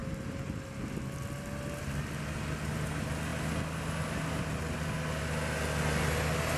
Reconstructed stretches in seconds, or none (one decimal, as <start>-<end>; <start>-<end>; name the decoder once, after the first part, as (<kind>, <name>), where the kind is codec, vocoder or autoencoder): none